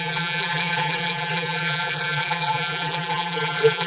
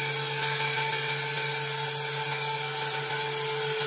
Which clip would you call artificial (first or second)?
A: first